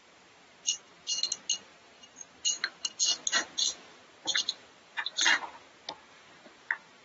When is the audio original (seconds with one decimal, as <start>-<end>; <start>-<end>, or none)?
0.0-7.0